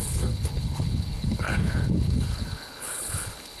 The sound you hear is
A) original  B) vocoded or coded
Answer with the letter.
B